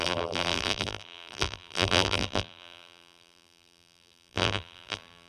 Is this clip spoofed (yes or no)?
yes